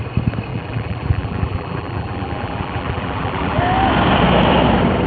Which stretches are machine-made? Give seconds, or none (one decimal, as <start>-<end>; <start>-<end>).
0.5-3.6